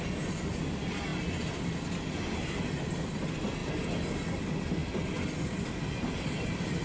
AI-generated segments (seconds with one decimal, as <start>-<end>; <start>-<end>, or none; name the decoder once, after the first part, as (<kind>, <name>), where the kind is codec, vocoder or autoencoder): none